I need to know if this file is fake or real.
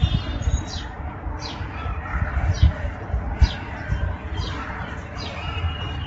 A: fake